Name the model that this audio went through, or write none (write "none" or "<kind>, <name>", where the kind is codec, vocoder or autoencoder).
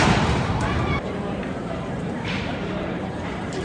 vocoder, BigVGAN v2